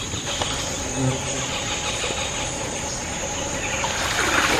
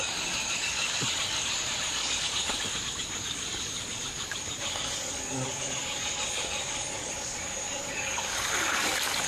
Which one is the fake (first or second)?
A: second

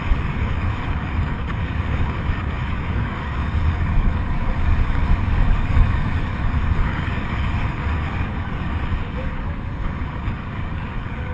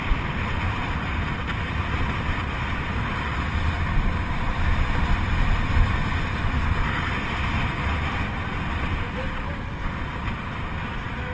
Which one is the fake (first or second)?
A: first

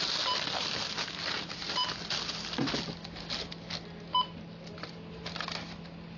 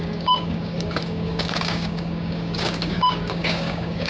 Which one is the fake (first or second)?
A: second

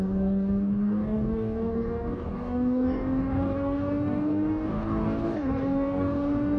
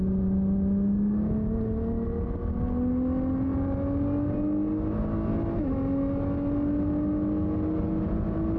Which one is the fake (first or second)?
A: first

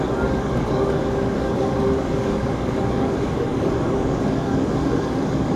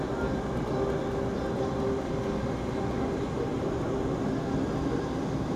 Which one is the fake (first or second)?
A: first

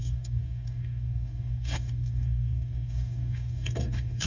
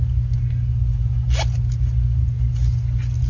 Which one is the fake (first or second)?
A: first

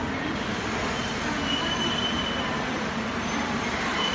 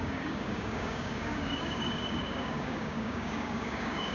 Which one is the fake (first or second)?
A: second